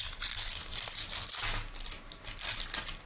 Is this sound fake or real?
real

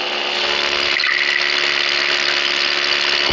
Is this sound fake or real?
real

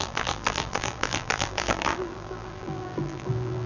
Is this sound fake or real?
fake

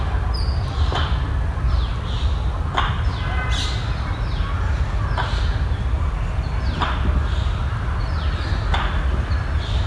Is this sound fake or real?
real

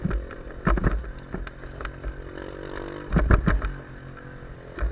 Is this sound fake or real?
real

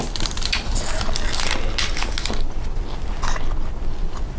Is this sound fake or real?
real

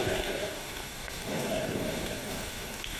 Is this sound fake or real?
fake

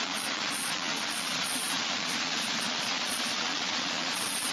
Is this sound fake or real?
fake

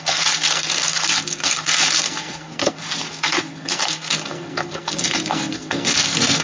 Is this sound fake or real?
fake